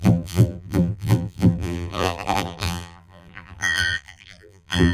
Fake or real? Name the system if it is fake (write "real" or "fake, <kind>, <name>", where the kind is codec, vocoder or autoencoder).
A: fake, vocoder, BigVGAN v2